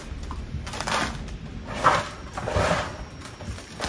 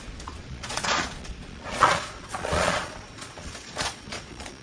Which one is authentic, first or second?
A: first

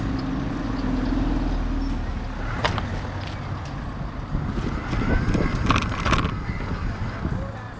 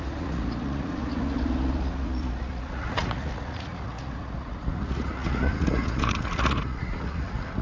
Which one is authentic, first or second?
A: first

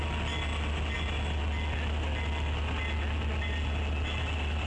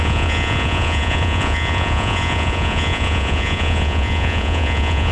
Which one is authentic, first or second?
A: first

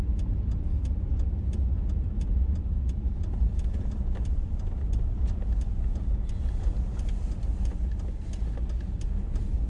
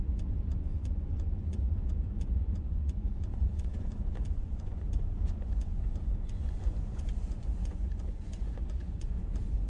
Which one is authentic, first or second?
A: first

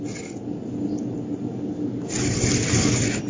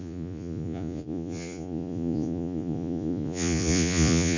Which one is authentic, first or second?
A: first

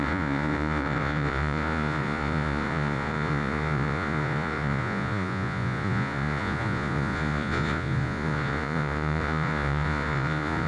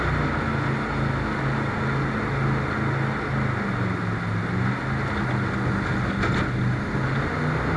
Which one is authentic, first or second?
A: second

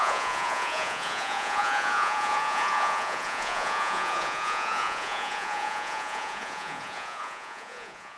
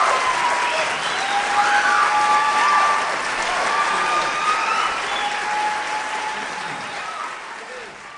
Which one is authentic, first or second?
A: second